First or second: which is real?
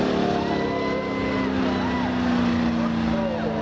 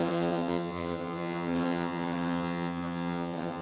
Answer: first